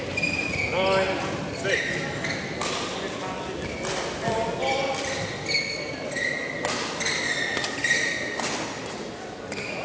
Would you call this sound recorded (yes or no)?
yes